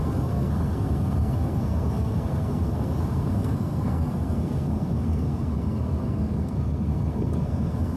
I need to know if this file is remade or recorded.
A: remade